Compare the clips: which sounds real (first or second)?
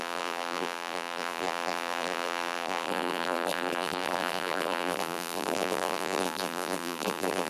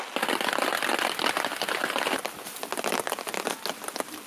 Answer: second